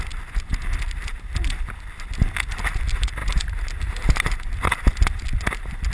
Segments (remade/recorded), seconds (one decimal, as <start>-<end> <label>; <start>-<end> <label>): 0.0-5.9 recorded